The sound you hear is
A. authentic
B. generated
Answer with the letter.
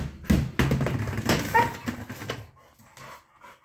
A